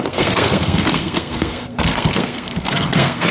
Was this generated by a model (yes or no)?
yes